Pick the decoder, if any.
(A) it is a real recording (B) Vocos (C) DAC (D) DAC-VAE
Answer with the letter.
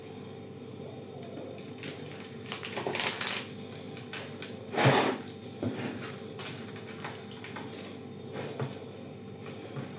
A